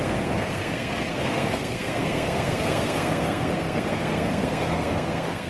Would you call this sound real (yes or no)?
no